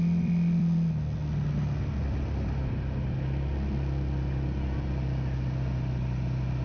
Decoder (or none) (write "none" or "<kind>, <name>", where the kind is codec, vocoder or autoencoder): none